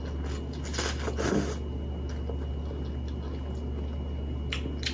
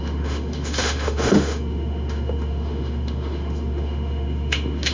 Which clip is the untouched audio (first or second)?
first